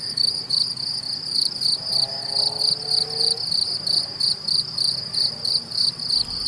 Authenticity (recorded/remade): recorded